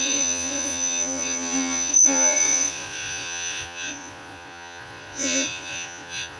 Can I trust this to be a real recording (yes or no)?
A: no